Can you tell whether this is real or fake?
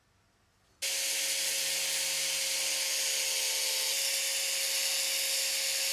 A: real